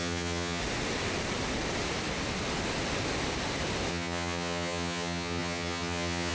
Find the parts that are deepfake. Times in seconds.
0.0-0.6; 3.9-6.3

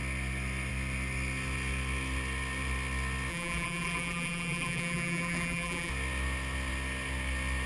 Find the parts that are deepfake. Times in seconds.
3.3-5.9

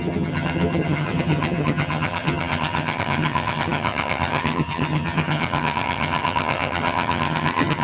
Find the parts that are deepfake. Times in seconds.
0.0-7.8

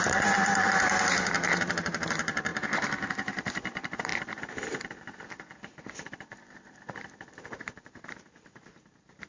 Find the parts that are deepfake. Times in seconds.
0.0-9.3

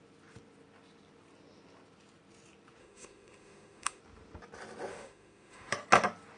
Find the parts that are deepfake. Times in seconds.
2.8-4.0; 4.9-5.7

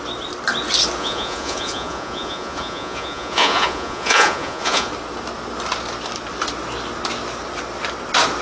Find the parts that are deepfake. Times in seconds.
1.0-4.9